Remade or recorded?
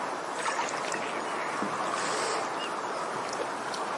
recorded